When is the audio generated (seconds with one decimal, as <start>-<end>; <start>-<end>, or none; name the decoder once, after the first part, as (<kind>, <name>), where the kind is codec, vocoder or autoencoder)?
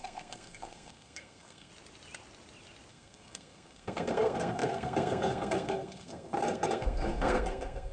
0.0-1.7 (codec, SNAC); 2.9-7.9